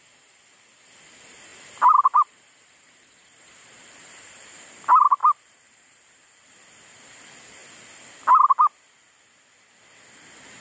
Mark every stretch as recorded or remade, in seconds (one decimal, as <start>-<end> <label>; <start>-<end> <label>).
0.0-1.5 recorded; 1.5-4.6 remade; 4.6-5.2 recorded; 5.2-7.1 remade; 7.1-10.6 recorded